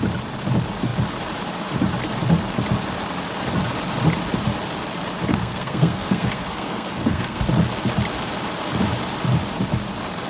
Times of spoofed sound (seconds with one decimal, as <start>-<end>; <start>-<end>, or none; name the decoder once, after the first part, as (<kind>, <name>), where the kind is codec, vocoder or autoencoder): 5.3-7.4 (codec, SNAC)